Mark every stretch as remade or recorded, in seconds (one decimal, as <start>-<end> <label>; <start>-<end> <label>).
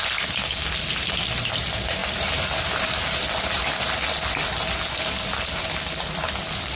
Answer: 0.0-6.8 recorded